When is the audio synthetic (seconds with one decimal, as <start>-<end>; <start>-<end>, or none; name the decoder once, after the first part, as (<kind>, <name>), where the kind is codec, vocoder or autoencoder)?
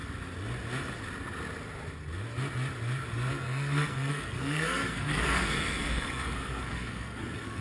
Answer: 3.3-7.6 (codec, SNAC)